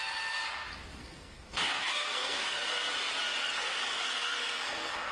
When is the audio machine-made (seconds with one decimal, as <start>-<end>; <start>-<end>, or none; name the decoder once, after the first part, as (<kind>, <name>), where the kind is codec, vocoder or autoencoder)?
1.0-2.9 (codec, SNAC); 3.4-5.1